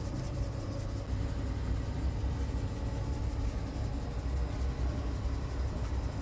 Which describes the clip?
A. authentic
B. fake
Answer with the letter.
A